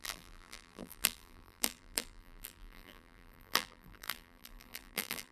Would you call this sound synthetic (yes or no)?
yes